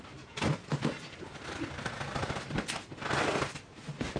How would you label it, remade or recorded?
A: recorded